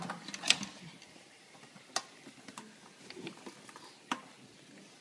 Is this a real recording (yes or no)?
yes